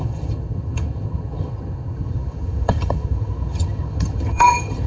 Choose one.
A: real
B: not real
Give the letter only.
B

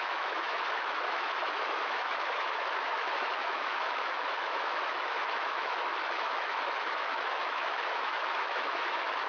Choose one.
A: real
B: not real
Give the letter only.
B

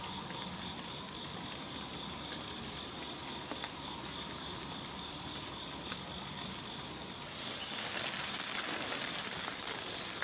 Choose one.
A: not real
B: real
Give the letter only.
B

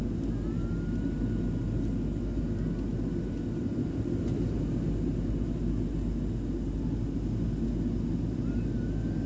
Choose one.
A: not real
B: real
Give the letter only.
B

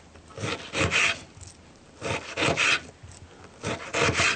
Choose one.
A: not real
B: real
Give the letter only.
B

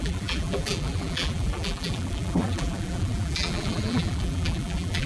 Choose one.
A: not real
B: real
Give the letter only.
A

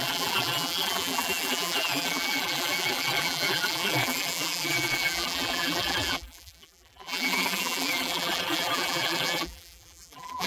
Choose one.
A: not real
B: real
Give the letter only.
A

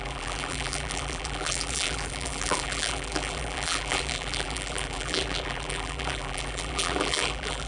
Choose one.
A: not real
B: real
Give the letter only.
A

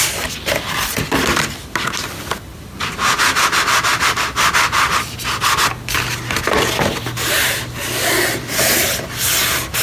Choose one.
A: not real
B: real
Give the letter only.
B